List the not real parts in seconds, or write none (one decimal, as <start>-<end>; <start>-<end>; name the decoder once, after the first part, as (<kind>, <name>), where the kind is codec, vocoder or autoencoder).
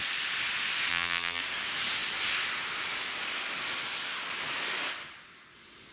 0.9-1.4 (vocoder, BigVGAN v2)